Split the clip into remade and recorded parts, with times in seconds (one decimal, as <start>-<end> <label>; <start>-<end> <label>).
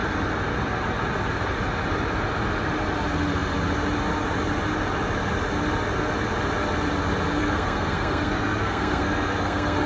0.0-7.4 recorded; 7.4-9.9 remade